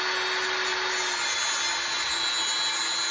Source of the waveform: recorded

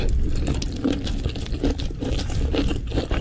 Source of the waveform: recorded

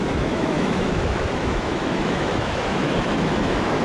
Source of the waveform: remade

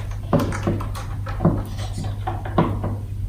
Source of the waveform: recorded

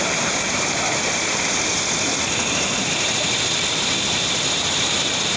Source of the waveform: remade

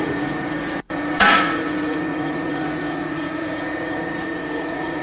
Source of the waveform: remade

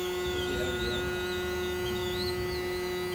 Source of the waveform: recorded